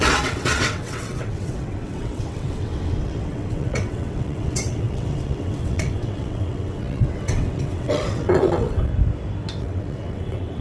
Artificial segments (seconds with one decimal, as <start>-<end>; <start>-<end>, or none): 0.0-8.9; 9.6-10.6